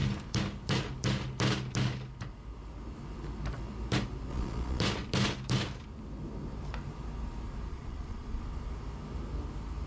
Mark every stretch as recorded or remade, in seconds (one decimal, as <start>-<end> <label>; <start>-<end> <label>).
0.0-4.3 recorded; 4.3-4.8 remade; 4.8-7.7 recorded; 7.7-8.4 remade; 8.4-9.9 recorded